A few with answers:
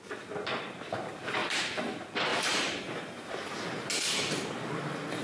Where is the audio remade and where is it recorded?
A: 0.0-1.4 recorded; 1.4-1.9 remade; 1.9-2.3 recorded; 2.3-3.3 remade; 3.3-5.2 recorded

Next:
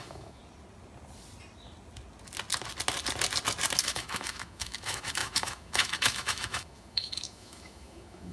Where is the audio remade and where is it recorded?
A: 0.0-0.4 remade; 0.4-3.8 recorded; 3.8-8.3 remade

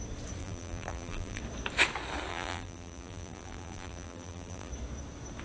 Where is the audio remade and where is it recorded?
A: 0.0-0.4 recorded; 0.4-1.4 remade; 1.4-2.3 recorded; 2.3-4.7 remade; 4.7-5.4 recorded

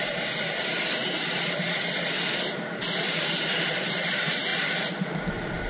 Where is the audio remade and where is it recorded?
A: 0.0-4.5 remade; 4.5-5.3 recorded; 5.3-5.7 remade